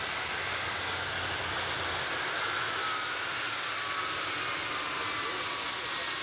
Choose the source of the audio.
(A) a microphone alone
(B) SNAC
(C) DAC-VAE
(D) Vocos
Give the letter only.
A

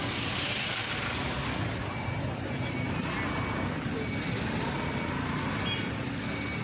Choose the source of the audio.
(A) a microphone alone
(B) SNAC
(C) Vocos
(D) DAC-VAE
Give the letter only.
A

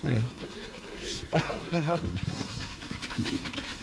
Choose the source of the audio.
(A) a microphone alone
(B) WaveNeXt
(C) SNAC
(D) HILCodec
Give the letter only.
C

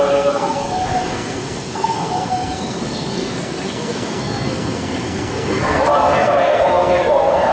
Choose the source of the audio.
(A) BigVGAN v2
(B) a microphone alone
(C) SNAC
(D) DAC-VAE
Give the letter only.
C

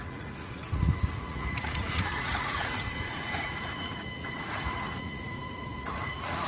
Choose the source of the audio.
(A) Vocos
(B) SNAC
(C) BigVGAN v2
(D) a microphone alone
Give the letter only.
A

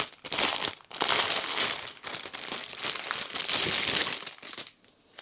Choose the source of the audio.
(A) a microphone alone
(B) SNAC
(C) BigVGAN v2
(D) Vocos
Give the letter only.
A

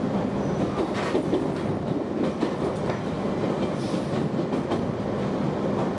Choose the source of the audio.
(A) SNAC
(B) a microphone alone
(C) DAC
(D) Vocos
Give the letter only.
B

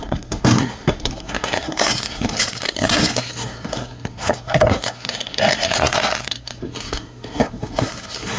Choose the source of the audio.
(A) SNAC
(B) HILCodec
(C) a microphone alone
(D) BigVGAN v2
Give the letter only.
A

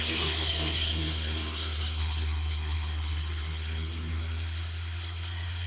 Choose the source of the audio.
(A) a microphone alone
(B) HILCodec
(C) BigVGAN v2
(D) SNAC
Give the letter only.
D